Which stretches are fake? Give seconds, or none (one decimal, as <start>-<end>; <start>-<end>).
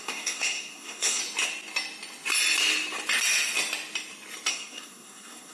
0.0-1.2; 4.5-5.5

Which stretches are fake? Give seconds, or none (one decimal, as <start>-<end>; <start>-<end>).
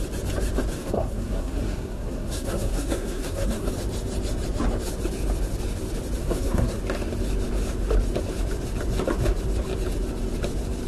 0.8-3.7; 6.2-6.8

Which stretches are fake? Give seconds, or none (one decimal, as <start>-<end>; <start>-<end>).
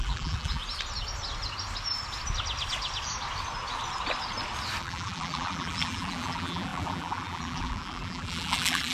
0.0-0.6; 4.8-8.9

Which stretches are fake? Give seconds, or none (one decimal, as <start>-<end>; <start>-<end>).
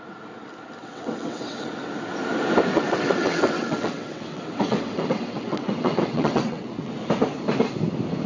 0.8-1.7; 2.7-6.9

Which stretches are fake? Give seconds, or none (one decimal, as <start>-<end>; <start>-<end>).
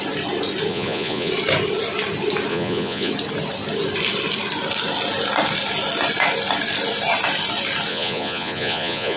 0.7-1.3; 2.5-3.1; 7.9-9.2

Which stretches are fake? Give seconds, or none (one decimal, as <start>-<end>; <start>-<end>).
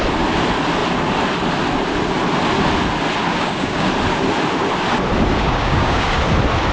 3.3-3.9; 5.4-6.2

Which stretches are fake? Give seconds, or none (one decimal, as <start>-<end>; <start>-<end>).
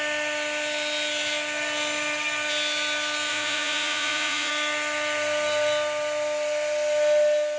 3.3-4.5